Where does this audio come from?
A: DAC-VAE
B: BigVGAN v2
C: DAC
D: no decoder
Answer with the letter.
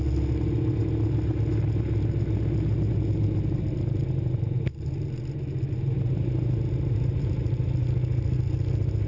D